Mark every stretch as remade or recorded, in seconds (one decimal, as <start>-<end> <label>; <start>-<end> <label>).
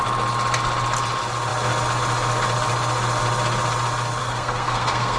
0.0-4.2 recorded; 4.2-5.2 remade